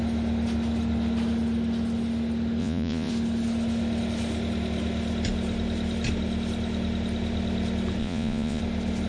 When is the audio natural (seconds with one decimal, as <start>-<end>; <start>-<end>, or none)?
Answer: 0.0-2.6; 3.1-8.0; 8.6-9.1